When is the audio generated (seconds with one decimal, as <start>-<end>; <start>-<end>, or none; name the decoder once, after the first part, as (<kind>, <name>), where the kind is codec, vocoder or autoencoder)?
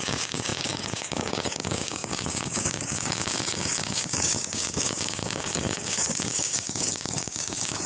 0.0-7.9 (codec, DAC)